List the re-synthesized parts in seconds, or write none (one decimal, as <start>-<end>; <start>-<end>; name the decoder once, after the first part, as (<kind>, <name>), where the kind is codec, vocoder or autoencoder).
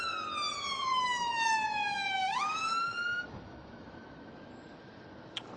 0.9-4.3 (autoencoder, DAC-VAE)